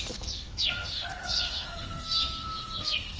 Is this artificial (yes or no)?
yes